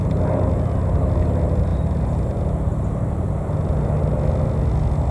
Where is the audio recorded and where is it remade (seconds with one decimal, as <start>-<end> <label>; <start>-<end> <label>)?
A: 0.0-5.1 recorded